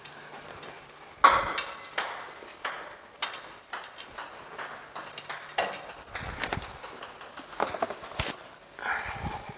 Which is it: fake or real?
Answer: real